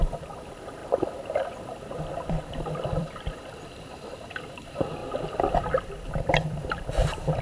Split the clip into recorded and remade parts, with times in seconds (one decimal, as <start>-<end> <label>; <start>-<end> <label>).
0.0-0.8 recorded; 0.8-4.5 remade; 4.5-5.0 recorded; 5.0-6.8 remade; 6.8-7.4 recorded